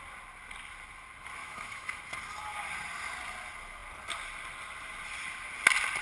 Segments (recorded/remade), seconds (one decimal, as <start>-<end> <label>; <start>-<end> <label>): 0.0-1.4 recorded; 1.4-2.0 remade; 2.0-6.0 recorded